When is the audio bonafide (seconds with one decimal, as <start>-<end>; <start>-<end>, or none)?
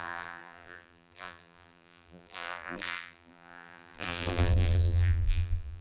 none